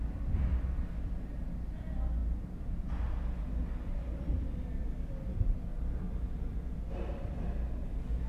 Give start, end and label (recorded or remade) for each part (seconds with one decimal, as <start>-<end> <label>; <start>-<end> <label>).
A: 0.0-2.2 recorded; 2.2-2.9 remade; 2.9-8.3 recorded